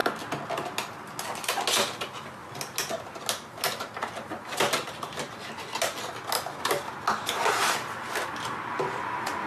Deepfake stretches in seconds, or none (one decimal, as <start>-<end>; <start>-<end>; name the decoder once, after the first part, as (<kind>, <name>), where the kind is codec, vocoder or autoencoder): none